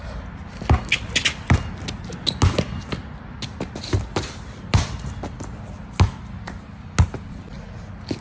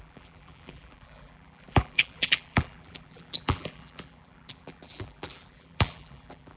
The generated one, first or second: second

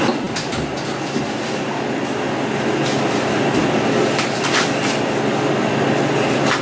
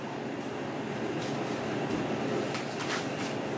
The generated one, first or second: second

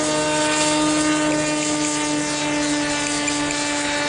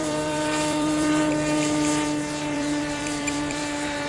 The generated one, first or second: second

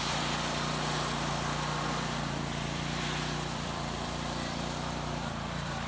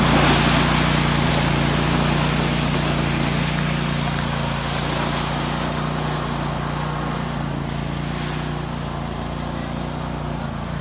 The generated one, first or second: first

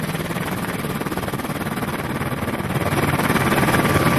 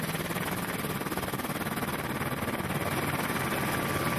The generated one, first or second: first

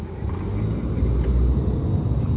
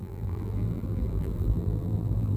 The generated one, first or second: second